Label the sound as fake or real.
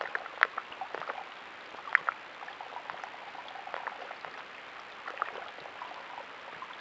real